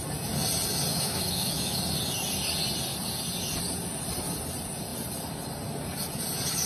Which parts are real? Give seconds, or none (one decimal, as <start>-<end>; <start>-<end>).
0.0-0.9; 1.8-6.7